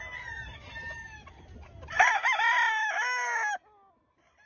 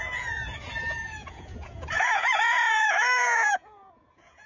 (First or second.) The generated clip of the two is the second